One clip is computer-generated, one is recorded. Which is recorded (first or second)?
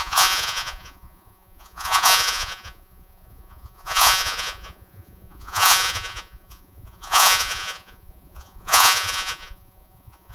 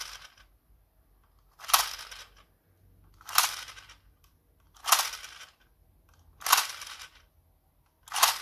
second